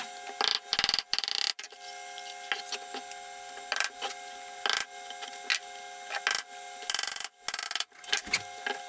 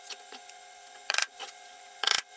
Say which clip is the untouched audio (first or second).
first